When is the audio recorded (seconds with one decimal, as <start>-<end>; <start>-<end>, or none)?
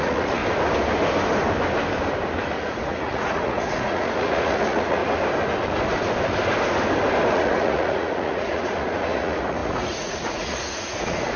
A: 0.4-2.5; 5.0-7.3